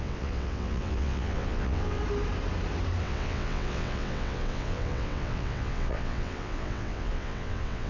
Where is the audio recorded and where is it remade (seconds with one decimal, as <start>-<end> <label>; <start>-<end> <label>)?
0.0-2.0 remade; 2.0-3.0 recorded; 3.0-7.9 remade